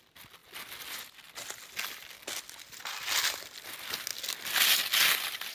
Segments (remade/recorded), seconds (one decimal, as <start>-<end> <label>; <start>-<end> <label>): 0.0-5.5 recorded